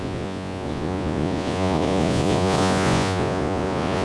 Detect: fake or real fake